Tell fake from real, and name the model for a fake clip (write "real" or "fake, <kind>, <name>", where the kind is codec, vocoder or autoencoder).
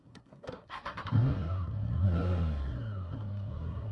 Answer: fake, codec, SNAC